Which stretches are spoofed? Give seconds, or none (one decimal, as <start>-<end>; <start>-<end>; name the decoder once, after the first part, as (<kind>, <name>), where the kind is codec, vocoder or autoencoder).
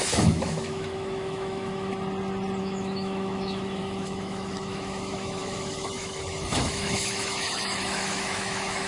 0.0-1.9 (autoencoder, DAC-VAE); 2.6-8.9